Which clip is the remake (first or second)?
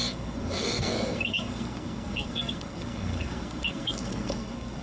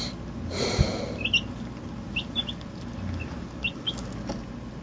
first